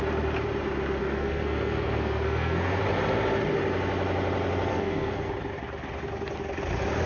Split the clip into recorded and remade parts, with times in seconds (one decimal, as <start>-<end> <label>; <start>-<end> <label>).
0.0-1.0 recorded; 1.0-2.8 remade; 2.8-4.7 recorded; 4.7-5.3 remade; 5.3-7.1 recorded